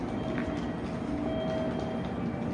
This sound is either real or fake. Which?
real